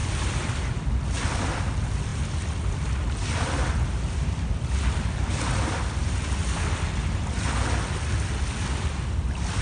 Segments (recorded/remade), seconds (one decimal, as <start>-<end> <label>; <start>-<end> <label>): 0.0-0.6 remade; 0.6-9.6 recorded